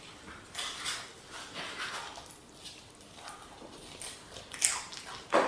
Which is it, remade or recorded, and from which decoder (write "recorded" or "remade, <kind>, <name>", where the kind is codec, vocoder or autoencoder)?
recorded